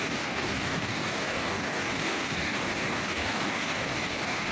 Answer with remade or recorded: remade